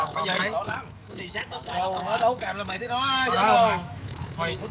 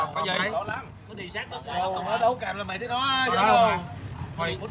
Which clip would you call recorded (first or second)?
second